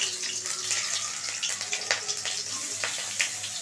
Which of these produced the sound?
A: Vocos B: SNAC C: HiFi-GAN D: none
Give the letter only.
D